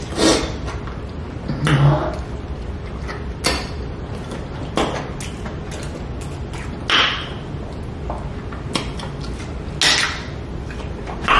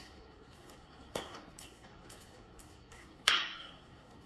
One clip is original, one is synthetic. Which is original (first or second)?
first